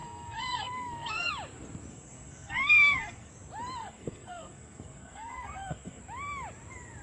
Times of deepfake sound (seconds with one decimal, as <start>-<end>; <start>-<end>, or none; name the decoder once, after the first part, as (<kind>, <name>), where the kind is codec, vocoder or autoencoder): 0.0-1.3 (codec, SNAC); 1.9-3.3; 3.8-6.0